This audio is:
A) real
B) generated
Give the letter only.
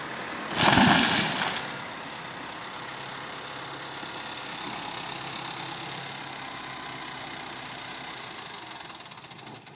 A